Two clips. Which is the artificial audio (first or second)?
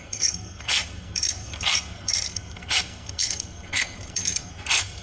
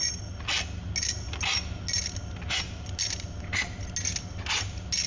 first